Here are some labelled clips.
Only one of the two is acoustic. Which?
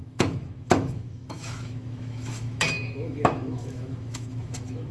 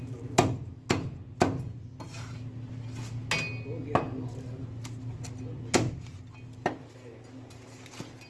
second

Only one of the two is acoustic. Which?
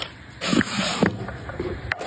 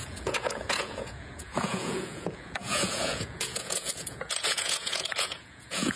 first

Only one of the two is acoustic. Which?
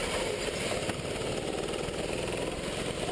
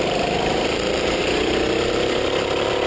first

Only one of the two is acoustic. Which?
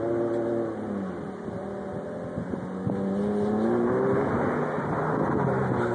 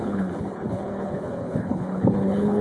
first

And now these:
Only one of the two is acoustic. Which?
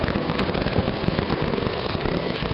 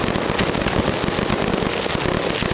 second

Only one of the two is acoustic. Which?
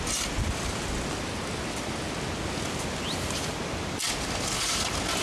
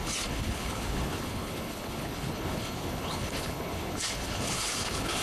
first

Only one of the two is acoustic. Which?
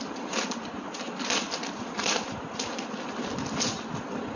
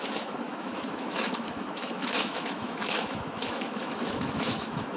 first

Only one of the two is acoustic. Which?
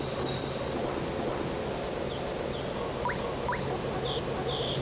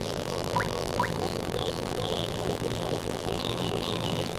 first